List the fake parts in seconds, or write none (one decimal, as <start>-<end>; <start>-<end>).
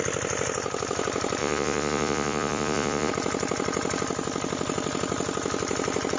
1.4-3.1